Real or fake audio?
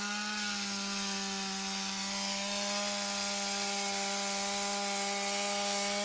real